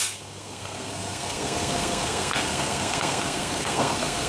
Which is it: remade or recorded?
remade